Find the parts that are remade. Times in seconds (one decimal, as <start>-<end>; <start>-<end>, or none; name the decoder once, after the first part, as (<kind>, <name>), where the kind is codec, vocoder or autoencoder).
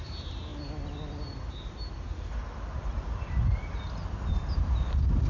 none